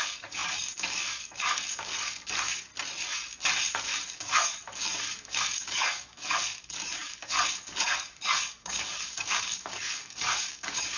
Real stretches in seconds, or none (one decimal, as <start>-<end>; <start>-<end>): 2.7-3.7